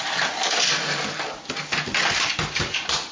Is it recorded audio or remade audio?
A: recorded